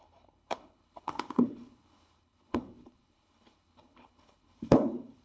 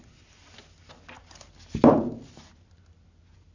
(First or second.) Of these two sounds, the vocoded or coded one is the first